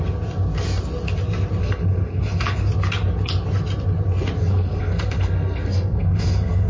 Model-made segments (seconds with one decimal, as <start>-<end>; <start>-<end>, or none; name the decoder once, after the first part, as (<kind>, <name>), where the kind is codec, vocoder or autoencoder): 1.6-2.7 (codec, SNAC); 4.4-6.7